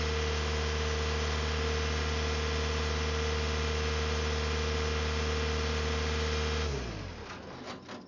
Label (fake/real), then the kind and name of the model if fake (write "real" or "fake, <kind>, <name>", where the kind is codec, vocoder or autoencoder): real